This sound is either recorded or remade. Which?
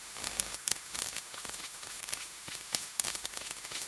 remade